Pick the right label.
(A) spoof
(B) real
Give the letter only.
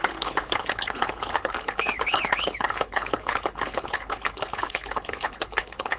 A